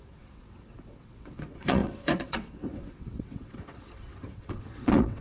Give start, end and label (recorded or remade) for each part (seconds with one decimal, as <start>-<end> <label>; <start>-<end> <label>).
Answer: 0.0-5.2 remade